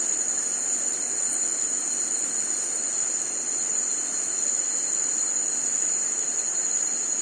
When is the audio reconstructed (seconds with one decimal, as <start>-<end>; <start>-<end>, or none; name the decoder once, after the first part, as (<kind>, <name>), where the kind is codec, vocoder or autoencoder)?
none